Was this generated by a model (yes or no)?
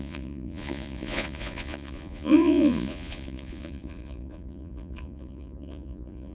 yes